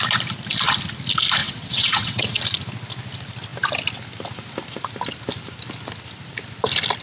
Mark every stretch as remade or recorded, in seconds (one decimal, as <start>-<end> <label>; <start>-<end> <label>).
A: 0.0-1.4 recorded; 1.4-2.4 remade; 2.4-7.0 recorded